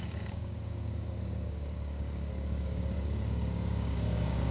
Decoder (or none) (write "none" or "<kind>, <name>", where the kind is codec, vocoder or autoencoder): codec, DAC